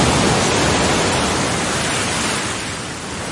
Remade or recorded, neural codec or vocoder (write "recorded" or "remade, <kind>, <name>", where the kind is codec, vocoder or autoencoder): recorded